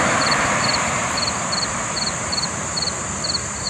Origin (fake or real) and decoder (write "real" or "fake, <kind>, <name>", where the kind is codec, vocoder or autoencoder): fake, vocoder, BigVGAN v2